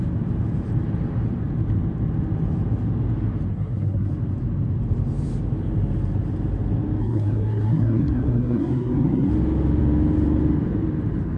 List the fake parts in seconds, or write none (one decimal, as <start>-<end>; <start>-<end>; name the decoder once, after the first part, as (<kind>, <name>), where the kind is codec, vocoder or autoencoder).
3.5-4.1 (codec, SNAC); 7.0-9.3